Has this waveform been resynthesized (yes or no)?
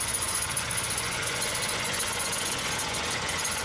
yes